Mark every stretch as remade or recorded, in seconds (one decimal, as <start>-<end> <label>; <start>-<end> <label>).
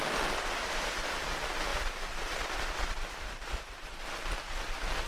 0.0-1.7 recorded; 1.7-4.3 remade; 4.3-5.1 recorded